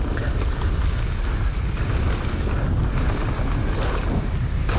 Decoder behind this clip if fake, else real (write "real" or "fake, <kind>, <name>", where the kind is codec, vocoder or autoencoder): real